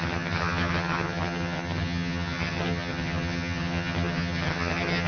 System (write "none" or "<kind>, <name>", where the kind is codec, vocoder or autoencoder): vocoder, HiFi-GAN